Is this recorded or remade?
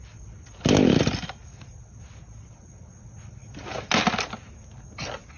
recorded